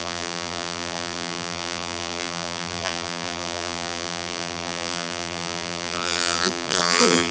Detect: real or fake fake